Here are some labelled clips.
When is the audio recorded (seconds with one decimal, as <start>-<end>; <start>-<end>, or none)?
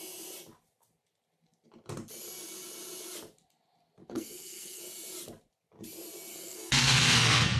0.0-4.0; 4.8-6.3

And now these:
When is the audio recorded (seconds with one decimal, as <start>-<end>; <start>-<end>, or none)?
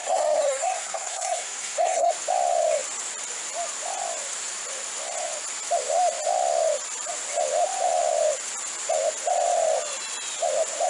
2.1-10.9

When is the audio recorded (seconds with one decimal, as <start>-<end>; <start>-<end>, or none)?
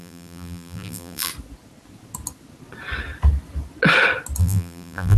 1.3-4.4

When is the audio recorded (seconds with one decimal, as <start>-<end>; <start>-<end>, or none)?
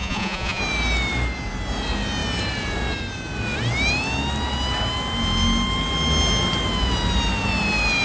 0.6-8.0